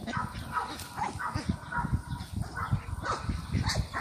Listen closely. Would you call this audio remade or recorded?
recorded